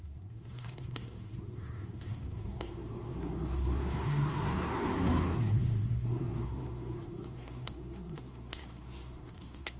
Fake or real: fake